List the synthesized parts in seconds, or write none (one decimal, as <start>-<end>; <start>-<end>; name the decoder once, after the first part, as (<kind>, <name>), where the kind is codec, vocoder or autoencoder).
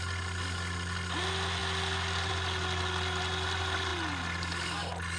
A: none